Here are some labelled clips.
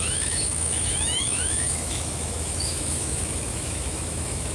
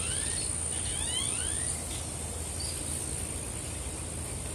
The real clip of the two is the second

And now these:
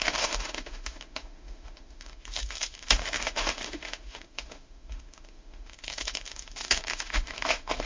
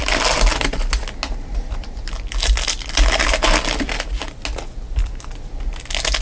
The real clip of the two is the second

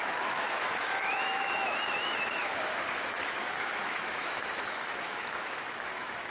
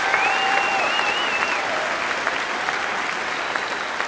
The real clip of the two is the second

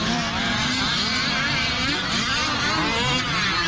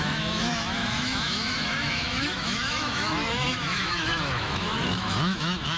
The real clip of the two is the first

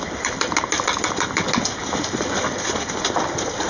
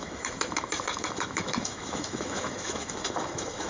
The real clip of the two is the first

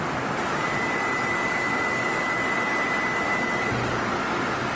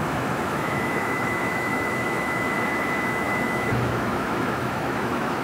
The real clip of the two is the first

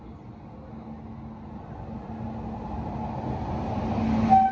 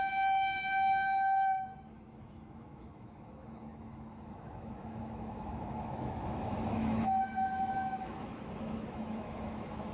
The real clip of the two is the first